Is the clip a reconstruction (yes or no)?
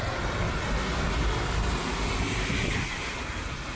no